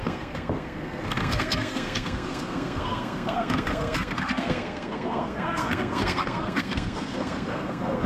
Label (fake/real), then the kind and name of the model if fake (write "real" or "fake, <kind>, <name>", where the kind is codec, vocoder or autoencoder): fake, codec, SNAC